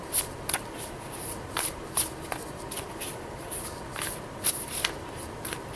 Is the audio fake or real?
fake